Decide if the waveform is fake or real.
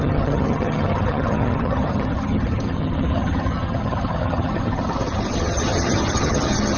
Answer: fake